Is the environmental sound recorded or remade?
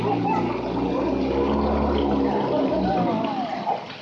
recorded